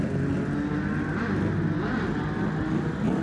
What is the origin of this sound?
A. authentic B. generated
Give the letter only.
A